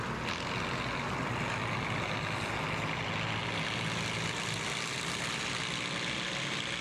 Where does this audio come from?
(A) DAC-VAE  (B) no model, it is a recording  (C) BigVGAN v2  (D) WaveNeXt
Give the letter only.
B